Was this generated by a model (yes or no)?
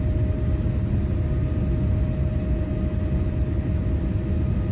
no